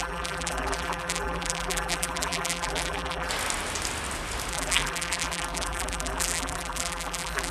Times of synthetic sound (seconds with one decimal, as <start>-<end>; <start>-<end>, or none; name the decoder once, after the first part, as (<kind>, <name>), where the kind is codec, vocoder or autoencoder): 0.0-3.3 (vocoder, BigVGAN v2); 4.5-7.5